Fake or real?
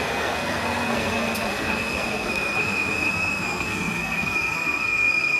fake